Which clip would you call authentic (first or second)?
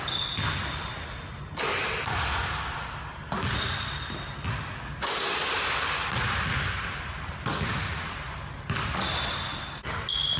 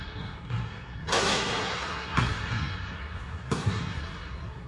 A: first